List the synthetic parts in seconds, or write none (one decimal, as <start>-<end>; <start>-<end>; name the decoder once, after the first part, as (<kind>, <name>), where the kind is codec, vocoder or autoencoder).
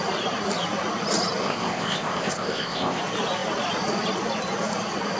1.4-3.0 (codec, ZipCodec)